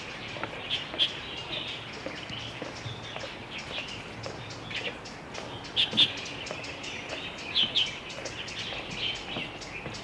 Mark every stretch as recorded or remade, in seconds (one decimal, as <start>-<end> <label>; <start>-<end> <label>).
0.0-10.0 recorded